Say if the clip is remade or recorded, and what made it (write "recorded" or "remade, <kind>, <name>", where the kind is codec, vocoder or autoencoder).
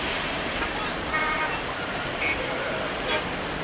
remade, vocoder, BigVGAN v2